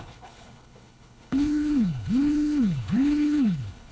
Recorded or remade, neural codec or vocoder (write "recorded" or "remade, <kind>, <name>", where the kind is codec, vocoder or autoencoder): remade, codec, HILCodec